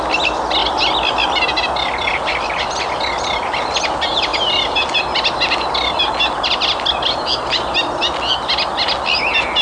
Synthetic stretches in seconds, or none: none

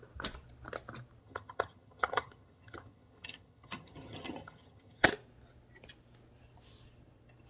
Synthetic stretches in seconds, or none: 1.2-5.1 (vocoder, HiFi-GAN)

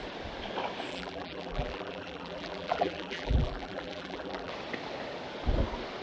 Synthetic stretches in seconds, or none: 0.9-4.5 (vocoder, BigVGAN v2)

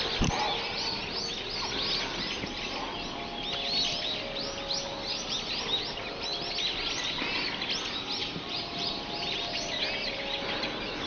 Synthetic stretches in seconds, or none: 8.2-9.8 (vocoder, BigVGAN v2)

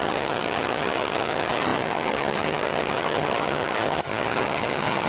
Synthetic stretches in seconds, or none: 0.0-5.1 (vocoder, HiFi-GAN)